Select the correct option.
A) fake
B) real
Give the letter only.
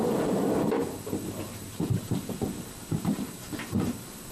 A